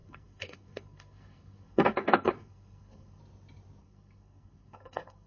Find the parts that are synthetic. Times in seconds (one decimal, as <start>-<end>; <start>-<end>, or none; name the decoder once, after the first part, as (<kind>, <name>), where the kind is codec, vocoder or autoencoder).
0.0-3.2 (codec, SNAC); 3.8-5.3